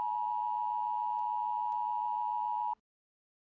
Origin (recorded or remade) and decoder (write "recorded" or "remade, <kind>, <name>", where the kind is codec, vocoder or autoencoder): recorded